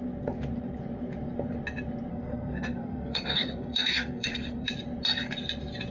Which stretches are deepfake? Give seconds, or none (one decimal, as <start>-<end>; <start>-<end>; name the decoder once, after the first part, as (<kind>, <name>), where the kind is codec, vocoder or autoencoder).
2.1-4.7 (codec, SNAC)

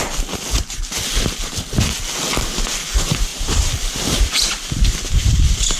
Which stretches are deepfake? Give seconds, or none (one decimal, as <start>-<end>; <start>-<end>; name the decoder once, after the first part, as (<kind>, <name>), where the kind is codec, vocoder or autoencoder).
3.3-5.1 (vocoder, BigVGAN v2)